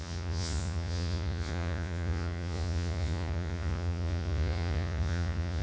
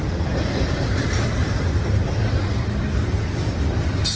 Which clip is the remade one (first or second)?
first